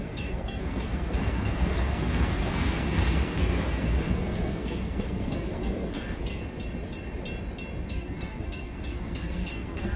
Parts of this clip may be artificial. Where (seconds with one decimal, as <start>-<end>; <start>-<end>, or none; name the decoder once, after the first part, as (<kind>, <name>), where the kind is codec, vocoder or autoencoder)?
0.0-6.4 (codec, SNAC); 7.9-10.0